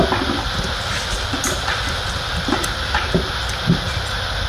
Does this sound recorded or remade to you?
recorded